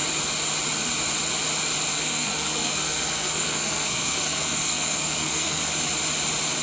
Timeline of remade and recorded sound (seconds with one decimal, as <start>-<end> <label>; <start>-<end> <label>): 0.0-1.9 recorded; 1.9-5.6 remade; 5.6-6.6 recorded